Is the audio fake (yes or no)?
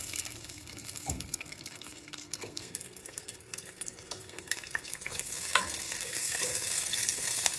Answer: yes